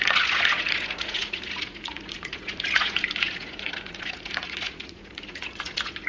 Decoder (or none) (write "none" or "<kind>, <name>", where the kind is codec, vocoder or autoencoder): vocoder, Vocos